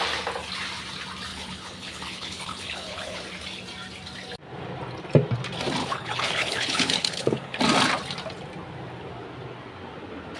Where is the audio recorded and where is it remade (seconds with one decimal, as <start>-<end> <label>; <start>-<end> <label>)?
0.0-1.3 recorded; 1.3-3.2 remade; 3.2-5.8 recorded; 5.8-7.6 remade; 7.6-10.4 recorded

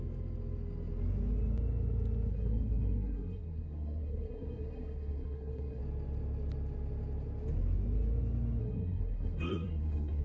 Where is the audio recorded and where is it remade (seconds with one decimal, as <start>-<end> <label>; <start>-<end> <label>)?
0.0-2.3 recorded; 2.3-5.8 remade; 5.8-8.6 recorded; 8.6-10.2 remade